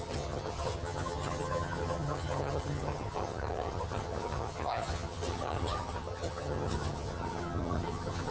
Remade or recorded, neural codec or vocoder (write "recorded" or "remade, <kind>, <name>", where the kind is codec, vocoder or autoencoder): remade, vocoder, HiFi-GAN